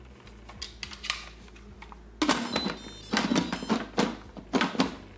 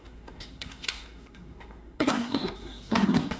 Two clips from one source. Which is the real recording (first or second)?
first